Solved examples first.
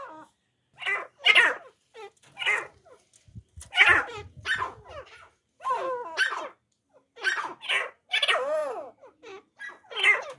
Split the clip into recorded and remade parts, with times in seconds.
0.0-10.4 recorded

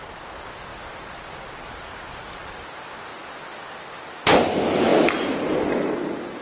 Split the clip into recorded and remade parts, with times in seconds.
0.0-3.1 recorded; 3.1-4.1 remade; 4.1-6.4 recorded